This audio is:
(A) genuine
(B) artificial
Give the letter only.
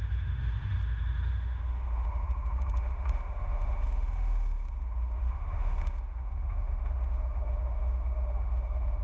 B